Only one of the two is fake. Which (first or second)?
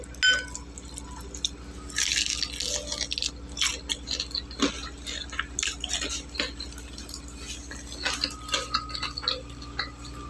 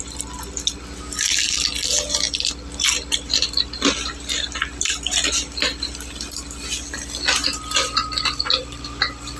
second